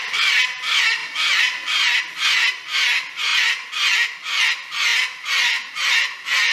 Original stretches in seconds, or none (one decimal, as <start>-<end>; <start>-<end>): 0.0-6.5